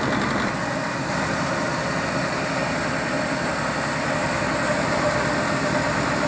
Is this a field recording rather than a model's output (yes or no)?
yes